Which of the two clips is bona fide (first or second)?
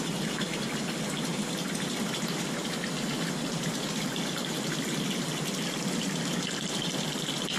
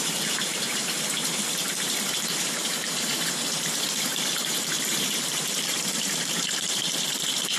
first